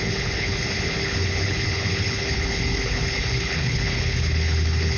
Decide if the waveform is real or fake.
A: fake